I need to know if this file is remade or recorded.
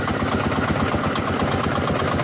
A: recorded